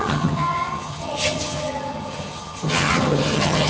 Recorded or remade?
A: remade